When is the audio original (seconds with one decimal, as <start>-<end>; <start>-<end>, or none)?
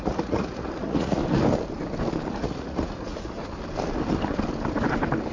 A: 1.2-2.3; 3.4-5.3